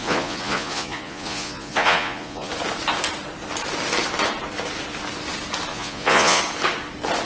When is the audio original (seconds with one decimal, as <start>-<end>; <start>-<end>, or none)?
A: 2.5-5.7; 6.4-7.3